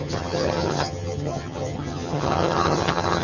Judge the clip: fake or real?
fake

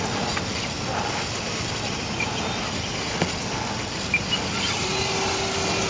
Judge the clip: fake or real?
real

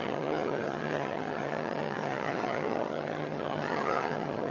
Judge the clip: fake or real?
fake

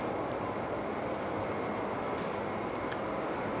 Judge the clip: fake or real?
real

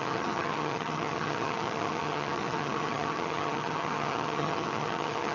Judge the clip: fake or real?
fake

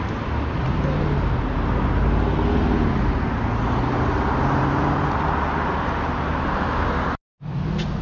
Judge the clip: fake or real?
real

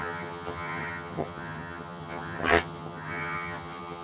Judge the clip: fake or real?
fake